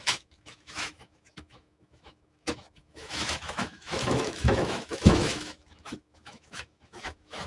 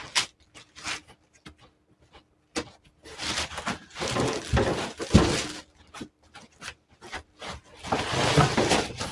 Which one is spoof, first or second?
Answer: first